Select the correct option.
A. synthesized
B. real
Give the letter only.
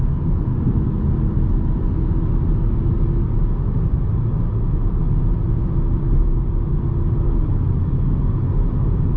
B